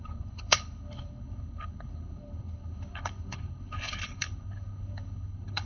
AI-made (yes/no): yes